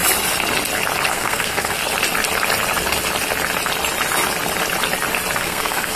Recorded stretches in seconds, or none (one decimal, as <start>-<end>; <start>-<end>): 0.0-1.1; 1.8-5.4